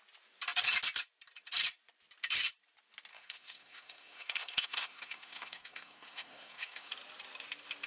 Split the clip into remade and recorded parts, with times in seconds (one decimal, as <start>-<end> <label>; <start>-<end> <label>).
0.0-3.1 recorded; 3.1-6.9 remade; 6.9-7.9 recorded